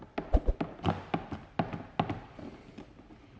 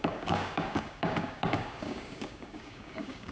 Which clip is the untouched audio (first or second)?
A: first